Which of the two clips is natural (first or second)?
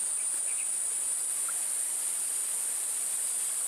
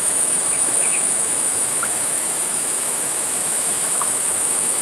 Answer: first